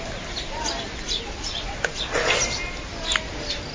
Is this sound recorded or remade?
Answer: recorded